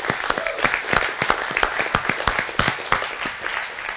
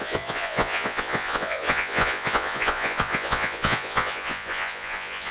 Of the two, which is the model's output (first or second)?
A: second